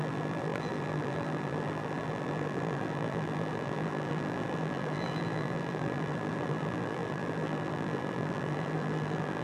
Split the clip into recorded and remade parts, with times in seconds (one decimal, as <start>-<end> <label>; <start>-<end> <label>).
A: 0.0-9.4 remade